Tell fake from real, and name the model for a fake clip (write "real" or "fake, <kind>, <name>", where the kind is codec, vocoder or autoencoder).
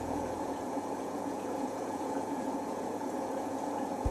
fake, vocoder, Vocos